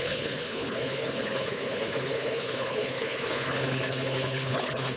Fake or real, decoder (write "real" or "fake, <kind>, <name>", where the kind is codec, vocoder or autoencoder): fake, codec, HILCodec